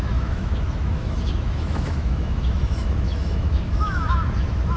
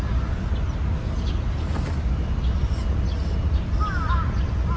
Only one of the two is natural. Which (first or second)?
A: second